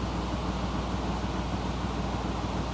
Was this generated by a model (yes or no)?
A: no